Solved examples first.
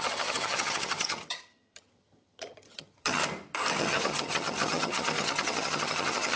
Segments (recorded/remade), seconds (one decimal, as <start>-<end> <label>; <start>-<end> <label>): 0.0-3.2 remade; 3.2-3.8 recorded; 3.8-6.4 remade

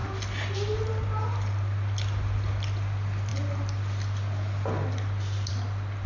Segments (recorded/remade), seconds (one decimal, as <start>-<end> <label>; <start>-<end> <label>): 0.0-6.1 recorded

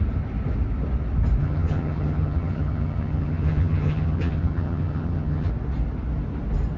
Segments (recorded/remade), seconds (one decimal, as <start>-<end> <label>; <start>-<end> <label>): 0.0-1.4 recorded; 1.4-5.5 remade; 5.5-6.8 recorded

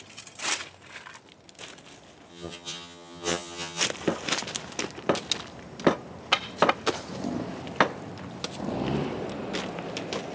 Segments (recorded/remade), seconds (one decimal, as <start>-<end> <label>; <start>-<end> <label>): 0.0-2.3 recorded; 2.3-3.8 remade; 3.8-10.3 recorded

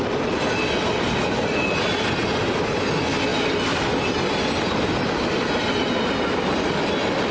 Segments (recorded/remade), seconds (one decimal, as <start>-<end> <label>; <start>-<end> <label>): 0.0-7.3 recorded

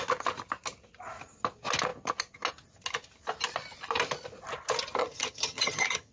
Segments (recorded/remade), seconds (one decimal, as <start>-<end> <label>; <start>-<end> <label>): 0.0-5.0 recorded; 5.0-6.1 remade

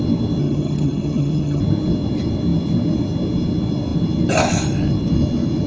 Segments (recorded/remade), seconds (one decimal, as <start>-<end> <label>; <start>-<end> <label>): 0.0-0.4 recorded; 0.4-1.6 remade; 1.6-5.7 recorded

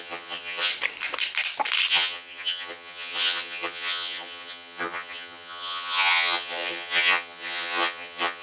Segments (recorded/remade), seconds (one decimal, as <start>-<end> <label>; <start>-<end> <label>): 0.0-0.7 remade; 0.7-1.9 recorded; 1.9-8.4 remade